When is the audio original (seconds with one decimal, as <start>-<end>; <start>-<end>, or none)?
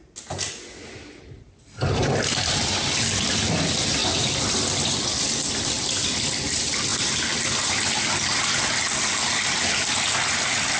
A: 0.0-10.8